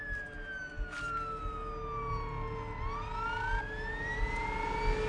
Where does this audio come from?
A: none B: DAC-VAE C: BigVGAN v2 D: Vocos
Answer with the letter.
A